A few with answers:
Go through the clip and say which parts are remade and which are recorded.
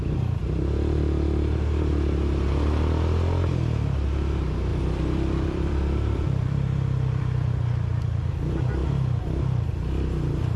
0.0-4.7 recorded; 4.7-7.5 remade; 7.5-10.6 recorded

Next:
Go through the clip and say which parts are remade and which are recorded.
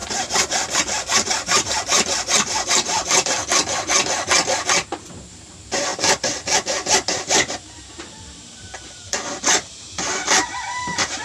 0.0-3.4 remade; 3.4-5.1 recorded; 5.1-11.2 remade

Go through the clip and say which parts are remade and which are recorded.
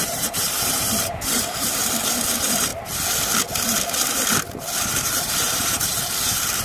0.0-2.7 remade; 2.7-3.5 recorded; 3.5-6.6 remade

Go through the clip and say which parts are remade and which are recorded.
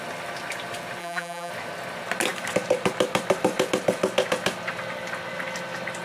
0.0-1.0 recorded; 1.0-1.5 remade; 1.5-6.0 recorded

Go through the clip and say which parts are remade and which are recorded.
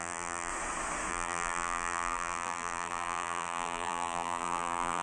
0.0-0.5 remade; 0.5-1.1 recorded; 1.1-5.0 remade